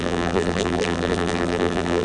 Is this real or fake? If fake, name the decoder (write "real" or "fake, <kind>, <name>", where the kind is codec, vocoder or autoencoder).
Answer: fake, vocoder, BigVGAN v2